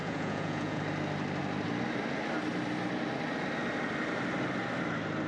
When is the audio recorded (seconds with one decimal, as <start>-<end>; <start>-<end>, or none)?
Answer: 0.8-5.3